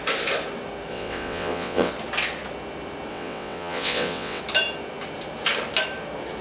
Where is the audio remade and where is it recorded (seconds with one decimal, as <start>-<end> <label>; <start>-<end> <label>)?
0.0-0.9 recorded; 0.9-1.9 remade; 1.9-3.1 recorded; 3.1-4.4 remade; 4.4-6.4 recorded